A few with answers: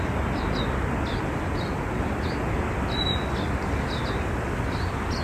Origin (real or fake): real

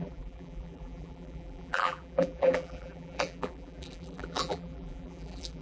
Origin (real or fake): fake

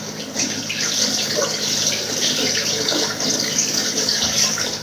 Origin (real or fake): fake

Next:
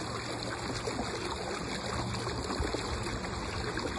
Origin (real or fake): real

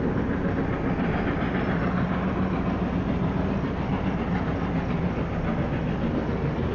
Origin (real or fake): real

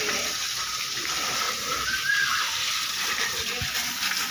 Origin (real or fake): real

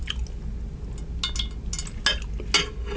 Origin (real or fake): real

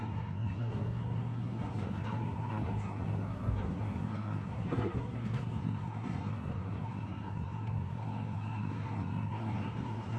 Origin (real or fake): fake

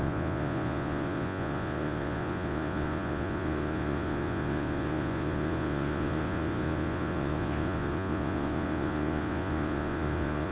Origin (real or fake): fake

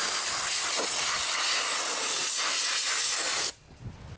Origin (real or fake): real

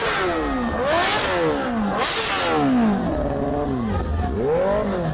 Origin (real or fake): real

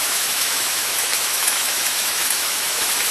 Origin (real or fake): fake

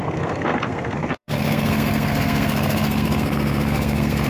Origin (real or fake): fake